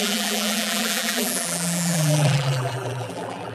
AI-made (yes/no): yes